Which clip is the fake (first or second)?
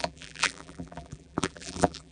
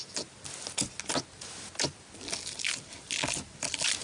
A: first